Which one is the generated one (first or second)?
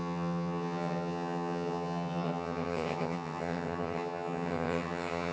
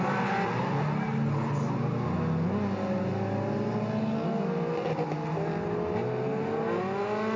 first